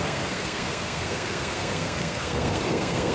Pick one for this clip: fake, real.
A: fake